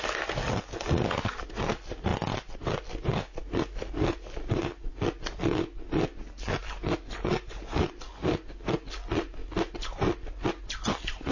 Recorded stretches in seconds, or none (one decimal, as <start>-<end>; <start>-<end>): 0.0-11.3